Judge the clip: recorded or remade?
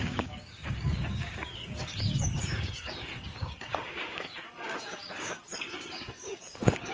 remade